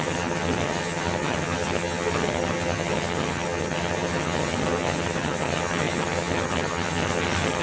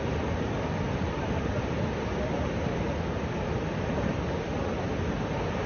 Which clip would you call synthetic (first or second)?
first